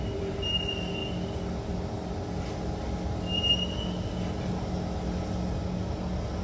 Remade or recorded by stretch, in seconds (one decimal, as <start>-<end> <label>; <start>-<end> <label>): 0.0-6.4 recorded